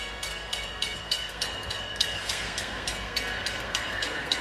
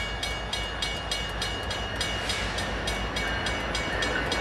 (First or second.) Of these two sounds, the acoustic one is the second